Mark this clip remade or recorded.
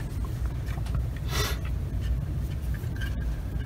recorded